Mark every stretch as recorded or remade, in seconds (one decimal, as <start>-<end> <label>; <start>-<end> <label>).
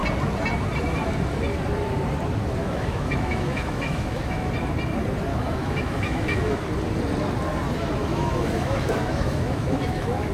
0.0-2.6 recorded; 2.6-4.5 remade; 4.5-5.3 recorded; 5.3-6.6 remade; 6.6-8.1 recorded; 8.1-10.3 remade